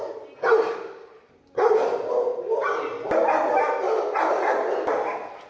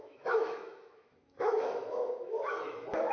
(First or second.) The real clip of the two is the first